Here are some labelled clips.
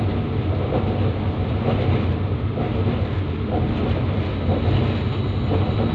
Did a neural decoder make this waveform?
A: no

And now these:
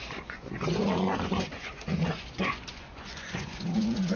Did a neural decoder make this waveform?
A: yes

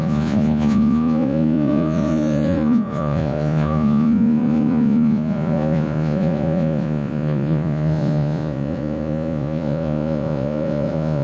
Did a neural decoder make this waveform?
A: yes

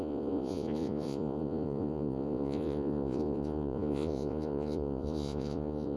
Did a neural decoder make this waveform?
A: yes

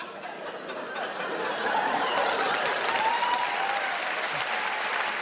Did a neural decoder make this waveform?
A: no